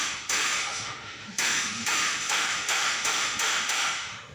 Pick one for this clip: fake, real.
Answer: fake